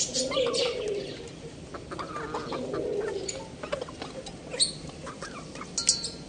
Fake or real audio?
real